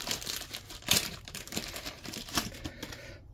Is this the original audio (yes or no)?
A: no